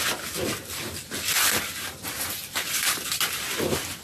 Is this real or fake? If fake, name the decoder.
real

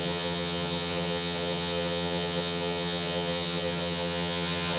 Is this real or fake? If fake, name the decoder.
fake, vocoder, HiFi-GAN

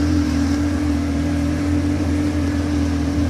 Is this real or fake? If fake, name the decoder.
fake, vocoder, BigVGAN v2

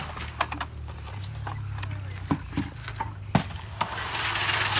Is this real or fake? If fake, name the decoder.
real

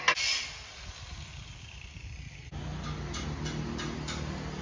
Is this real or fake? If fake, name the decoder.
real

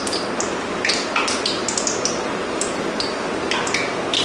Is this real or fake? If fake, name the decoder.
real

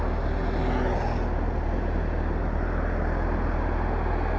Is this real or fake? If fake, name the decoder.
real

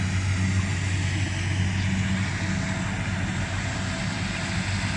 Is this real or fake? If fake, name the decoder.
real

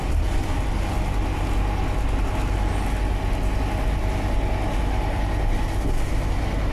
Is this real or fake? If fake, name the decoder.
real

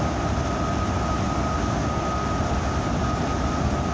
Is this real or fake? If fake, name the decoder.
real